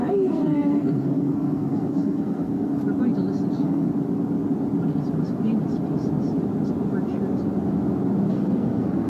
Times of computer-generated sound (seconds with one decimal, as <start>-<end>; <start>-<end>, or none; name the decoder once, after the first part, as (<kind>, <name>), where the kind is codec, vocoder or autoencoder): 0.0-2.8 (codec, SNAC); 3.5-3.9; 8.3-9.1